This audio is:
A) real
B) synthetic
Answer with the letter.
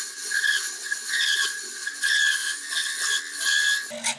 A